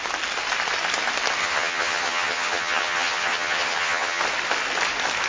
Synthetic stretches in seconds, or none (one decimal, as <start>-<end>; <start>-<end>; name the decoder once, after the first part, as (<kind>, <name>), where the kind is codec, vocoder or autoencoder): 1.4-4.2 (vocoder, HiFi-GAN)